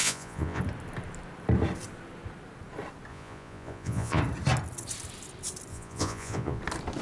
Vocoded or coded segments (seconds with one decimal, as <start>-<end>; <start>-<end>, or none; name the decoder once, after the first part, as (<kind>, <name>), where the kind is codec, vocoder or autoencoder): 0.0-0.6 (vocoder, Vocos); 3.1-4.2; 5.7-6.6